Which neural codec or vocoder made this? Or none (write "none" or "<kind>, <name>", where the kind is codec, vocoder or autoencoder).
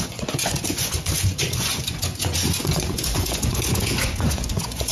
vocoder, Vocos